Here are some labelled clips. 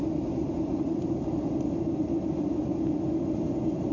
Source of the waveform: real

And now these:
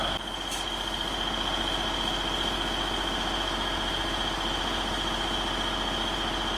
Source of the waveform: real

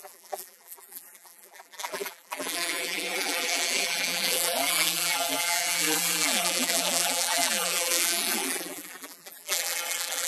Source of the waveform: fake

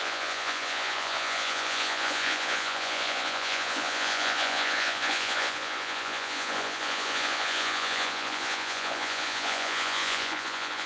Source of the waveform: fake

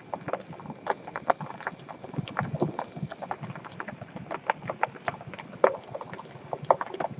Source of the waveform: real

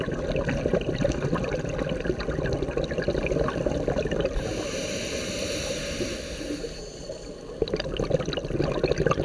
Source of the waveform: real